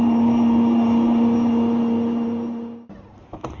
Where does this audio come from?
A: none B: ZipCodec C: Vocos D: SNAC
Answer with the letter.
A